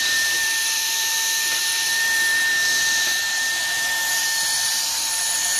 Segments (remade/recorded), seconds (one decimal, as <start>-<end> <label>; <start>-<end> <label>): 0.0-5.6 remade